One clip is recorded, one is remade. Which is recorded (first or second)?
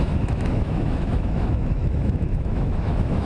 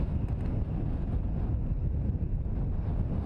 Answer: second